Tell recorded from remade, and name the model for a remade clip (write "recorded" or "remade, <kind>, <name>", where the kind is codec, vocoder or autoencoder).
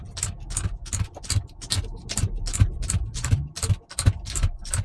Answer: recorded